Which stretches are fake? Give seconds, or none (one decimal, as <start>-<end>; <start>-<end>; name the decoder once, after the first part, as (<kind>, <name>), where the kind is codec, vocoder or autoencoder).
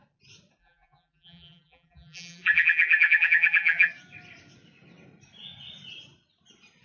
0.6-3.9 (vocoder, BigVGAN v2)